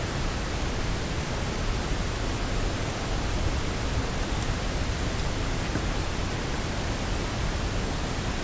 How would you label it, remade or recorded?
recorded